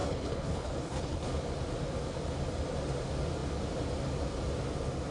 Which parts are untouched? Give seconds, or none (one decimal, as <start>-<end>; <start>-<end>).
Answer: 1.3-5.1